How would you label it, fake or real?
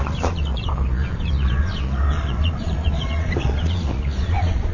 fake